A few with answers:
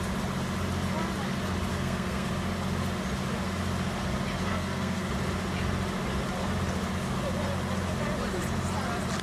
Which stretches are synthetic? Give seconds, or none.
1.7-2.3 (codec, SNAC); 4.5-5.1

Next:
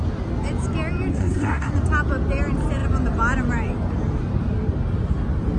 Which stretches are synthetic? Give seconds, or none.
1.1-1.7 (codec, SNAC)

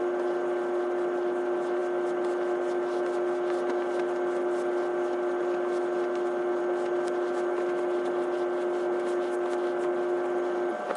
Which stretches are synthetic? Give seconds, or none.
none

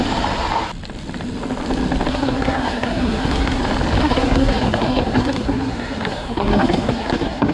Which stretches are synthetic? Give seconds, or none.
2.1-3.6 (codec, SNAC); 4.0-7.5

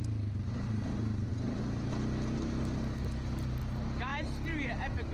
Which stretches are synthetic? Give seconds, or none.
none

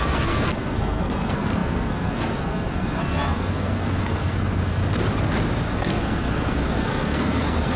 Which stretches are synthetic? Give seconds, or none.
0.0-4.8 (codec, SNAC); 5.7-7.8

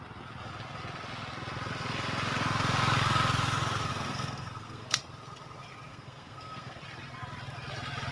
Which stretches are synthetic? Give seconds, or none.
3.9-5.0 (codec, SNAC); 5.9-6.8

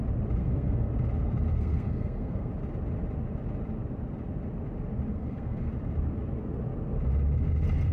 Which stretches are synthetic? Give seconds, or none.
0.4-0.9 (codec, SNAC); 1.5-2.5; 5.1-5.7